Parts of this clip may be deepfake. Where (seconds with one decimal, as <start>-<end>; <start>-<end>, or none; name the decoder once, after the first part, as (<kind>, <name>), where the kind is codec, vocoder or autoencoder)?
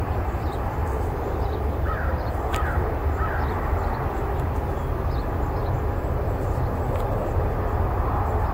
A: none